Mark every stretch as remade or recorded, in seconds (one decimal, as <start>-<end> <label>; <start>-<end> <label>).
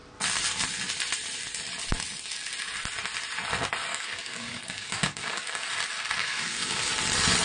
0.0-3.9 recorded; 3.9-5.7 remade; 5.7-6.2 recorded; 6.2-6.9 remade; 6.9-7.4 recorded